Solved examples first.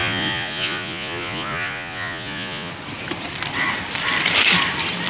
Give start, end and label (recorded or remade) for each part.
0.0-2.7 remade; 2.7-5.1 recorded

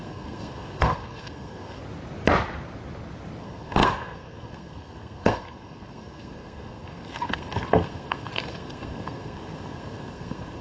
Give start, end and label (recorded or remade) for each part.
0.0-1.8 remade; 1.8-3.4 recorded; 3.4-10.6 remade

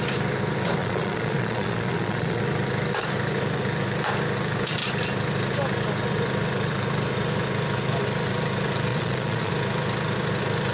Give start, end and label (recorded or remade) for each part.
0.0-0.8 recorded; 0.8-2.4 remade; 2.4-8.9 recorded; 8.9-9.5 remade; 9.5-10.7 recorded

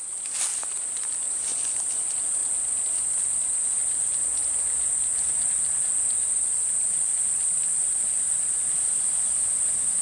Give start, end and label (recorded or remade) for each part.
0.0-0.5 recorded; 0.5-1.3 remade; 1.3-2.4 recorded; 2.4-3.3 remade; 3.3-4.4 recorded; 4.4-8.7 remade; 8.7-10.0 recorded